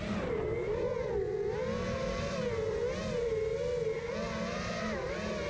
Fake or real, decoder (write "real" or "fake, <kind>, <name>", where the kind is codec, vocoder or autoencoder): real